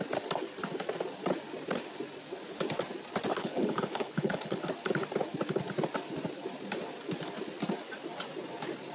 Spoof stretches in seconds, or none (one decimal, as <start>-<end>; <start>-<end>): 3.3-4.7